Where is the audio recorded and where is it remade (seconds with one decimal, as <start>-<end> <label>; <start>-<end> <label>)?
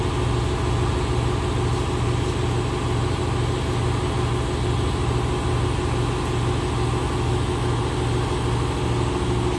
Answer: 0.0-7.0 recorded; 7.0-7.8 remade; 7.8-9.6 recorded